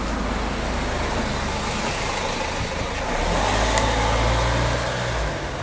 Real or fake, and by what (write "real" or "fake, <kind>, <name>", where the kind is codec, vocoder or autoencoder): real